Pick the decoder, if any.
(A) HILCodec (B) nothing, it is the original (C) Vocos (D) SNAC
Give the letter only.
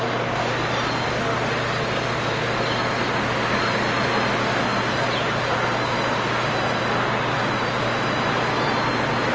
B